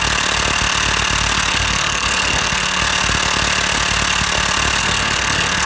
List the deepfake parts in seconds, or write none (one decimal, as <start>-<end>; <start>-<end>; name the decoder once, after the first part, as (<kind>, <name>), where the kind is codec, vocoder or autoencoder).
1.5-2.8 (codec, SNAC); 4.8-5.7